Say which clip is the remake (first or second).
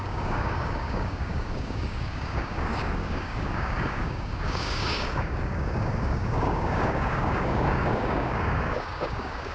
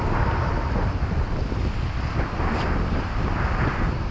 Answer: first